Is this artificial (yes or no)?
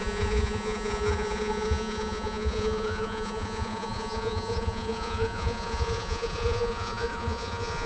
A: yes